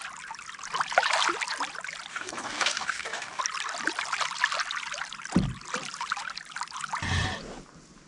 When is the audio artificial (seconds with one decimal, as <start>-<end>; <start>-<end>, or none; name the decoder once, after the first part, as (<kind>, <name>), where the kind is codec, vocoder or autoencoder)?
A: 2.1-3.4 (codec, DAC)